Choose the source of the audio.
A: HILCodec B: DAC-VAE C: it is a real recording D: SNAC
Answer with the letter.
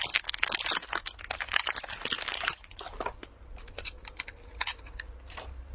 C